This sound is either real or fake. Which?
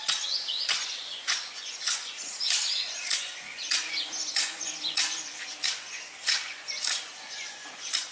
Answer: fake